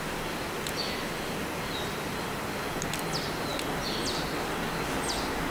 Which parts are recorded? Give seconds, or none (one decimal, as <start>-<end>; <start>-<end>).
0.0-5.5